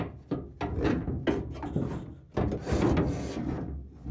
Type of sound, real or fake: real